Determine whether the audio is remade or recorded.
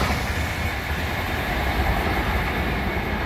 recorded